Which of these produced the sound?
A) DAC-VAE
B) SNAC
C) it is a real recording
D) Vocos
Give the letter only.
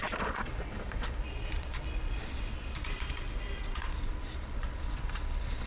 D